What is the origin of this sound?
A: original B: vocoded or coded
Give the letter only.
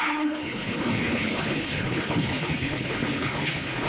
B